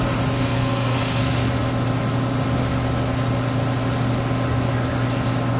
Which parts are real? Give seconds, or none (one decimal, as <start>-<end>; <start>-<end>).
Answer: 0.0-0.4; 1.2-5.6